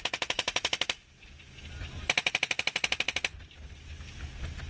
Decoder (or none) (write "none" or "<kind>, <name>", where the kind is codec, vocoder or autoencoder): none